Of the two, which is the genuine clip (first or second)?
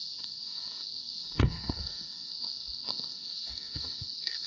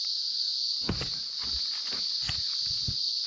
second